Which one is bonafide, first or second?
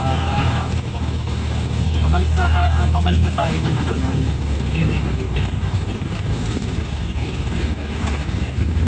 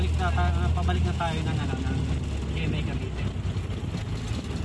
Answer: second